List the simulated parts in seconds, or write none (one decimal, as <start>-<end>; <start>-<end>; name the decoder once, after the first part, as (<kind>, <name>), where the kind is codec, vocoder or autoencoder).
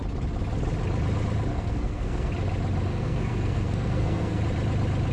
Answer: 1.5-2.3 (codec, SNAC); 2.9-4.4